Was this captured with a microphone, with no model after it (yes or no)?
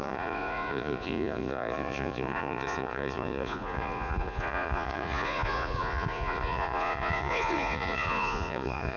no